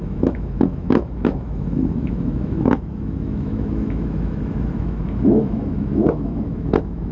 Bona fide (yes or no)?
no